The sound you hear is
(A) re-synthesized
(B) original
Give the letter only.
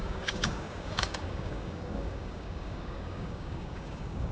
A